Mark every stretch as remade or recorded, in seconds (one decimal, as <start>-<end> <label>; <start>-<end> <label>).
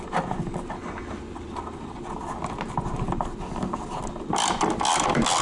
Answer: 0.0-5.4 recorded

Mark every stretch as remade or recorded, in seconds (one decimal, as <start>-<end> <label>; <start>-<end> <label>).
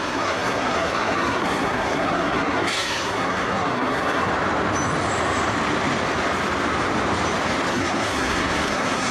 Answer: 0.0-4.3 remade; 4.3-7.7 recorded; 7.7-9.1 remade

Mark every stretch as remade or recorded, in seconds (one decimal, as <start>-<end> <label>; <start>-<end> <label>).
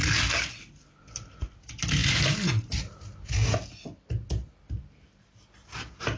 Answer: 0.0-6.2 recorded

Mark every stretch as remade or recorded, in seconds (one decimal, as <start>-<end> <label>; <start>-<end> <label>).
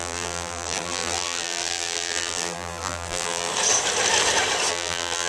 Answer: 0.0-3.5 remade; 3.5-4.7 recorded; 4.7-5.3 remade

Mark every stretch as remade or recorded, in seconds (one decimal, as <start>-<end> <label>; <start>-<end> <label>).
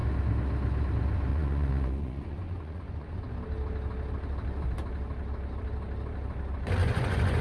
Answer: 0.0-1.3 recorded; 1.3-3.3 remade; 3.3-6.8 recorded; 6.8-7.4 remade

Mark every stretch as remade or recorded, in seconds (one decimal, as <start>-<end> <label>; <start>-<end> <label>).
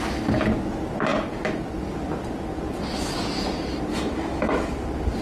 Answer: 0.0-3.9 recorded; 3.9-4.8 remade; 4.8-5.2 recorded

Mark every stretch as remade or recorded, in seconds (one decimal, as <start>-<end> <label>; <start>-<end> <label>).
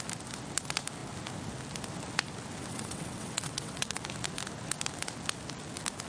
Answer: 0.0-2.6 recorded; 2.6-4.0 remade; 4.0-6.1 recorded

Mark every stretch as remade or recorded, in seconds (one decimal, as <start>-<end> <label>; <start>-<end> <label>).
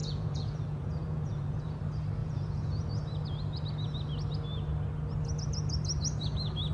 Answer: 0.0-1.8 remade; 1.8-2.2 recorded; 2.2-2.9 remade; 2.9-6.7 recorded